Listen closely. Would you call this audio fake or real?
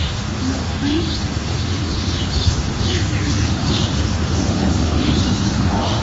fake